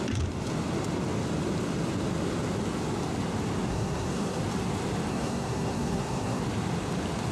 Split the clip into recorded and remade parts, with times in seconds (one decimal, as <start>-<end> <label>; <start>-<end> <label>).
0.0-3.7 recorded; 3.7-4.4 remade; 4.4-5.1 recorded; 5.1-6.4 remade; 6.4-7.3 recorded